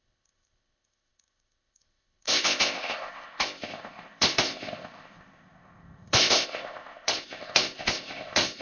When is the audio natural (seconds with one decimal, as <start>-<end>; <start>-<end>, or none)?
none